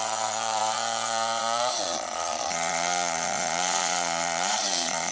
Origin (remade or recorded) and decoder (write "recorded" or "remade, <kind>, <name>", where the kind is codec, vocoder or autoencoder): remade, vocoder, Vocos